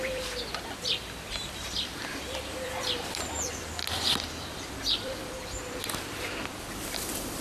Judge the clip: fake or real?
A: fake